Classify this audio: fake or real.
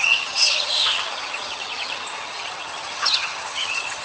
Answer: fake